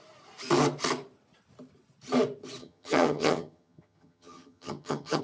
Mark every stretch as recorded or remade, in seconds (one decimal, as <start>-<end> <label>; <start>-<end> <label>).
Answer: 0.0-2.6 recorded; 2.6-5.2 remade